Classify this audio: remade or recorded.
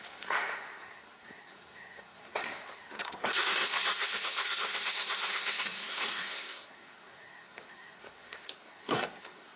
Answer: remade